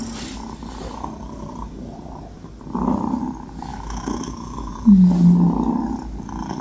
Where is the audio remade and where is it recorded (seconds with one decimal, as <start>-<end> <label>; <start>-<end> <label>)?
0.0-3.7 recorded; 3.7-4.7 remade; 4.7-6.6 recorded